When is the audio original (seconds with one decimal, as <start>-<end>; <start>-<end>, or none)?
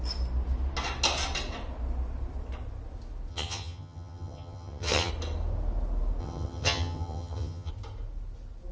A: 0.0-3.3; 5.1-6.2; 7.7-8.7